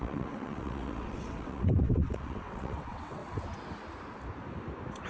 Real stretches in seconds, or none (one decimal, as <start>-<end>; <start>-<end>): 3.2-5.1